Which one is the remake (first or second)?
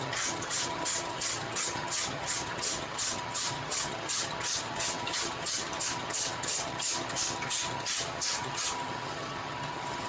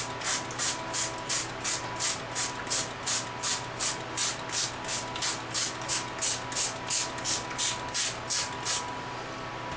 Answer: first